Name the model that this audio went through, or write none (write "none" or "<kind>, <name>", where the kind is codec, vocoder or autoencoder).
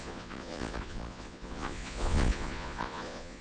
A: vocoder, Vocos